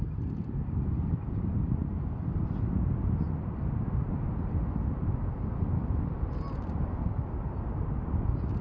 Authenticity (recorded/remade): recorded